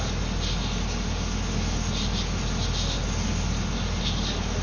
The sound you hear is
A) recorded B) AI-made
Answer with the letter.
A